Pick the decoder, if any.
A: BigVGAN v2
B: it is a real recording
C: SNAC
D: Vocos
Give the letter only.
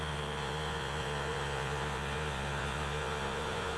D